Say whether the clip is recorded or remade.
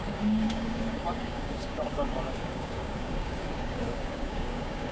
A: remade